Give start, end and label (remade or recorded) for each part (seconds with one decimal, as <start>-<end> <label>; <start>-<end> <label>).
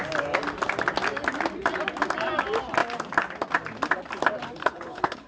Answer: 0.0-4.6 recorded; 4.6-5.3 remade